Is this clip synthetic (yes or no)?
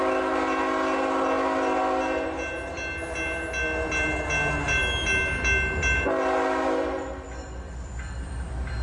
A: no